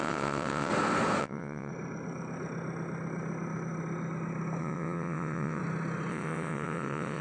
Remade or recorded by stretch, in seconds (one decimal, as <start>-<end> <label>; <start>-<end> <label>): 0.0-0.7 remade; 0.7-1.2 recorded; 1.2-1.7 remade; 1.7-4.6 recorded; 4.6-5.6 remade; 5.6-6.1 recorded; 6.1-7.2 remade